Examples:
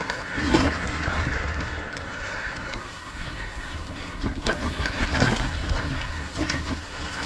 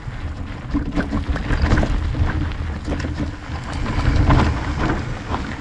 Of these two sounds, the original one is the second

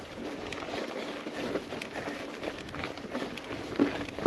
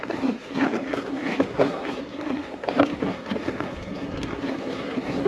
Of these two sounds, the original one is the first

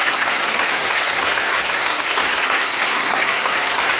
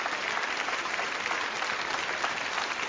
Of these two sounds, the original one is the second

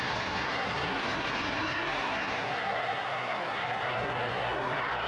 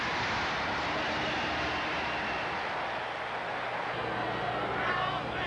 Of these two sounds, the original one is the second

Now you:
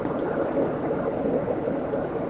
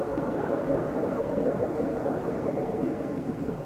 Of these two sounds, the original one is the first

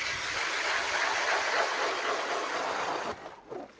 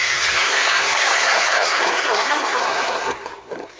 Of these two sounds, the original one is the first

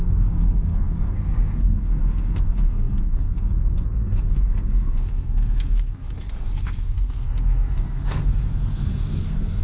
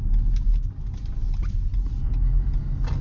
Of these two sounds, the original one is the second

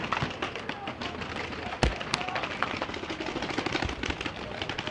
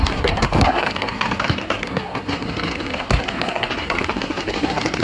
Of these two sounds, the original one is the first